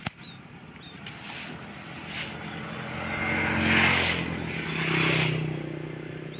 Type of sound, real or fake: real